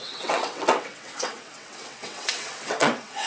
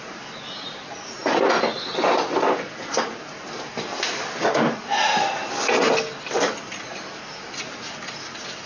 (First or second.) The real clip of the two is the second